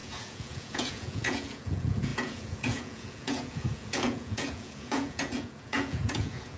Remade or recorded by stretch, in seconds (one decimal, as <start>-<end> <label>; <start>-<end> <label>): 0.0-6.6 remade